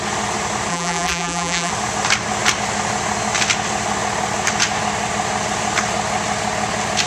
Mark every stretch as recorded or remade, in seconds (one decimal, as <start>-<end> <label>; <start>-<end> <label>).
0.0-0.7 recorded; 0.7-1.7 remade; 1.7-7.1 recorded